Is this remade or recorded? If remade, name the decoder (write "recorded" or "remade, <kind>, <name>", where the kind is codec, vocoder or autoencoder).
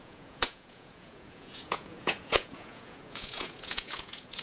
remade, vocoder, Vocos